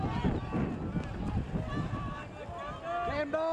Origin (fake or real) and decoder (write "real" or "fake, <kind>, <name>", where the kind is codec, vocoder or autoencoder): real